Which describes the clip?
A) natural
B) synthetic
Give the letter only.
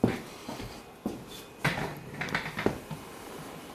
A